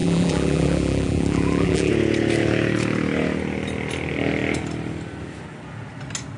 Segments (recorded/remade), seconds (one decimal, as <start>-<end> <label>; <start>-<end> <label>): 0.0-1.9 remade; 1.9-6.4 recorded